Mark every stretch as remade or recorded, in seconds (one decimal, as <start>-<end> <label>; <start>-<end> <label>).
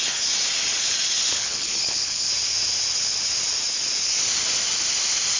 0.0-1.3 recorded; 1.3-2.3 remade; 2.3-5.4 recorded